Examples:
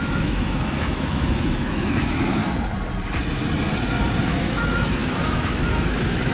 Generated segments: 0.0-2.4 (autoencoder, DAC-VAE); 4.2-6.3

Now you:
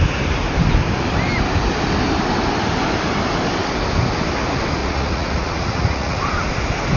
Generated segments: 4.8-6.2 (vocoder, Vocos)

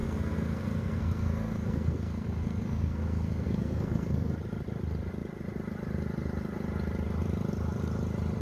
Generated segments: 0.0-4.3 (codec, SNAC)

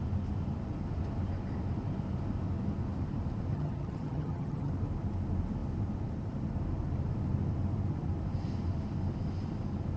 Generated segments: 3.5-4.7 (vocoder, HiFi-GAN)

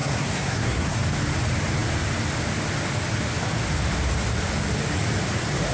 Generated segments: 0.0-1.0 (codec, SNAC)

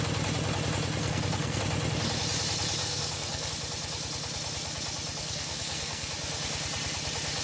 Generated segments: 1.0-1.6 (codec, SNAC); 2.8-3.5; 5.2-6.1